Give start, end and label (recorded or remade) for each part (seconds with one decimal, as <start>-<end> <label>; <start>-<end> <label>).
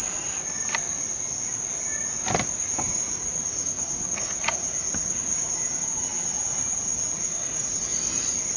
0.0-2.6 recorded; 2.6-7.9 remade; 7.9-8.6 recorded